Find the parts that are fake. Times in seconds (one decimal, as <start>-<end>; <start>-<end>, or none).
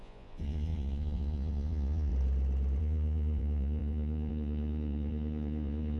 0.0-2.1; 2.8-6.0